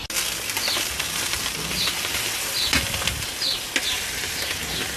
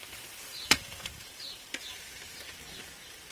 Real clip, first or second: first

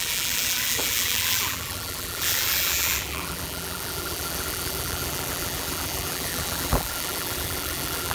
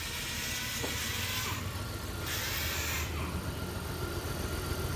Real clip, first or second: second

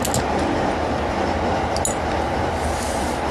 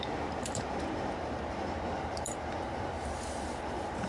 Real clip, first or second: first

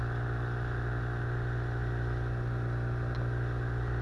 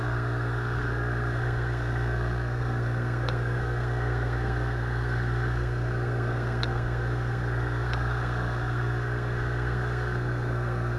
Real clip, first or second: first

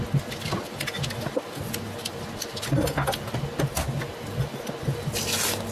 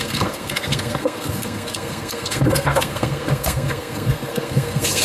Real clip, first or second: first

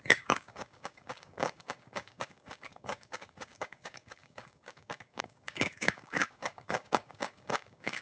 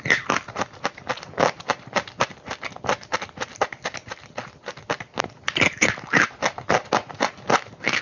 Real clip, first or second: second